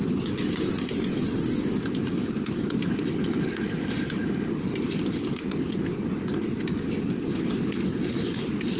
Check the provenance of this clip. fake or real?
real